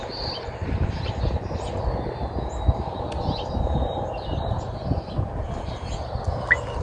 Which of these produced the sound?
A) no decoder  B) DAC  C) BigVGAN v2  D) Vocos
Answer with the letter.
A